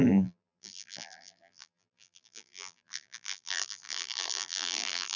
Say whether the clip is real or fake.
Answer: fake